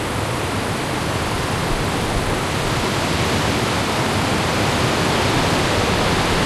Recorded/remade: recorded